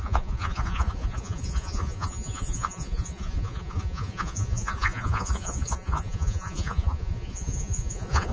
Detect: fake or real fake